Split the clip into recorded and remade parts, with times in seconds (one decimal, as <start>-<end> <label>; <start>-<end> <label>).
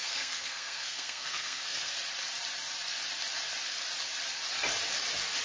0.0-1.9 remade; 1.9-5.4 recorded